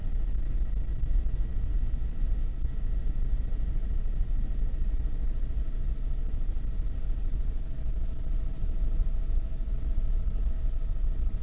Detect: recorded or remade recorded